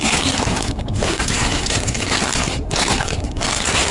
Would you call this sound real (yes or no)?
no